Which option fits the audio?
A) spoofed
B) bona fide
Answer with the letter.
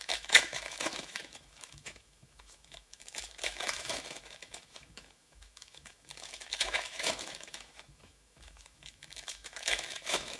A